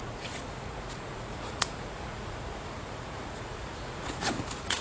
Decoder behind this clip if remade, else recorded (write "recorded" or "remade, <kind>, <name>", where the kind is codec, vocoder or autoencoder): remade, vocoder, Vocos